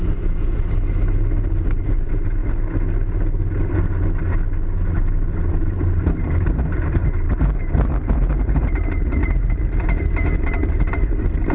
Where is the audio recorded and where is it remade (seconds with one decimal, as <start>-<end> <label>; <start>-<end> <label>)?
0.0-2.4 remade; 2.4-5.0 recorded; 5.0-9.2 remade; 9.2-10.9 recorded; 10.9-11.5 remade

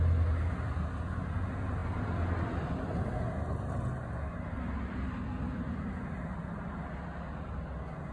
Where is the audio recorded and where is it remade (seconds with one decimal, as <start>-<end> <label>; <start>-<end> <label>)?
0.0-8.1 recorded

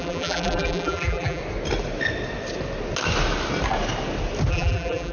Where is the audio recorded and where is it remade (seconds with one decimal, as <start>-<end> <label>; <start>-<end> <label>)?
0.0-1.4 remade; 1.4-4.5 recorded; 4.5-5.1 remade

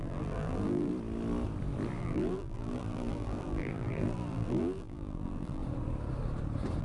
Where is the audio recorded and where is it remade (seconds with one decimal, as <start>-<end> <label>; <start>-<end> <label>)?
0.0-0.9 remade; 0.9-2.0 recorded; 2.0-5.6 remade; 5.6-6.8 recorded

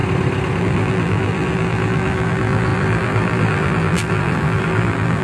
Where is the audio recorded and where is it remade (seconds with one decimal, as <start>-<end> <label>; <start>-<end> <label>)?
0.0-0.6 recorded; 0.6-5.2 remade

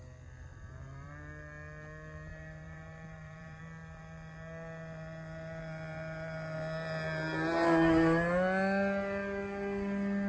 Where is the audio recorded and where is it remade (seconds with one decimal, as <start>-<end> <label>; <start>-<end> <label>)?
0.0-0.5 recorded; 0.5-1.1 remade; 1.1-2.3 recorded; 2.3-3.6 remade; 3.6-10.3 recorded

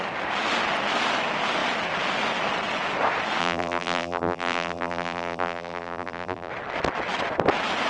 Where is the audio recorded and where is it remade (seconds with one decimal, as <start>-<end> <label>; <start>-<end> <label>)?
0.0-3.4 recorded; 3.4-6.5 remade; 6.5-7.9 recorded